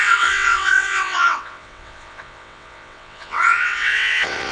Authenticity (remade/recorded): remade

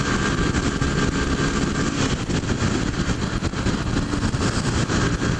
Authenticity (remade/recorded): recorded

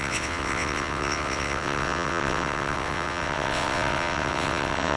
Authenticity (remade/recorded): remade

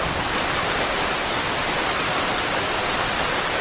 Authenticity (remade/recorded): recorded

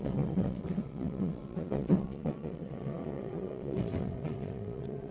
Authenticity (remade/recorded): remade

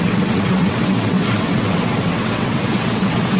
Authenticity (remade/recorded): remade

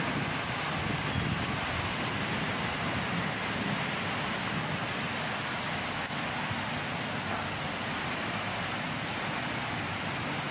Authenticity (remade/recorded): recorded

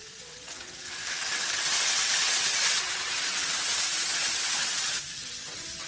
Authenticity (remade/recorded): remade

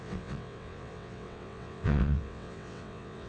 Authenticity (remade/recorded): remade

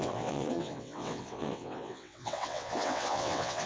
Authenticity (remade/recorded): remade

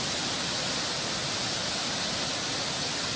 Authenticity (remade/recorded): recorded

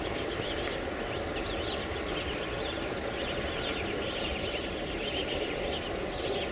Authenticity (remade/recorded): recorded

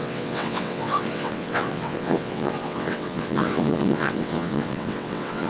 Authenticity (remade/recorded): remade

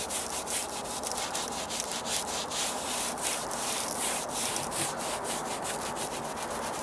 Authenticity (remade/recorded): recorded